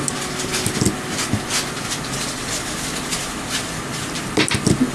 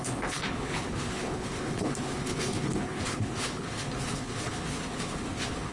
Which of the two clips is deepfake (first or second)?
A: second